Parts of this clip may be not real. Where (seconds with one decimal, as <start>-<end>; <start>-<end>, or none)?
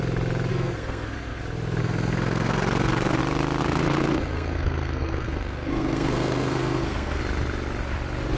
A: 0.5-1.4; 1.8-3.2; 3.6-7.2